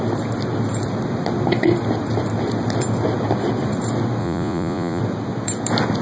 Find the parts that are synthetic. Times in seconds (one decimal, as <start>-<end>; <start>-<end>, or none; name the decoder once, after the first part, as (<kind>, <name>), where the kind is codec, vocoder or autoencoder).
4.2-5.0 (vocoder, Vocos)